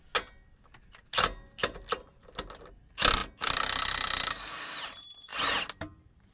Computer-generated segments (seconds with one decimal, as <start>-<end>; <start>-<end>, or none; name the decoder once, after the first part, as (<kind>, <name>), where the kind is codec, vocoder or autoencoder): none